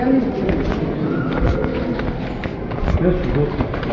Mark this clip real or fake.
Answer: real